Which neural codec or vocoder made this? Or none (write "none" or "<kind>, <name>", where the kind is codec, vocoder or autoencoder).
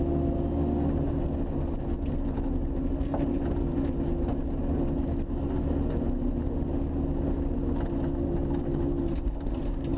none